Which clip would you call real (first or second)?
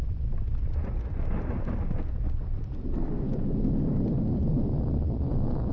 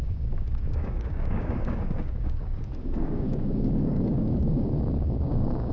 first